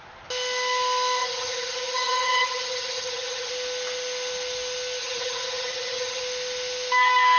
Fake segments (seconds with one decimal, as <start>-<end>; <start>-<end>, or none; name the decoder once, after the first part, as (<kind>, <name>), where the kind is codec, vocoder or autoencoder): 1.2-3.5 (vocoder, HiFi-GAN); 5.0-6.2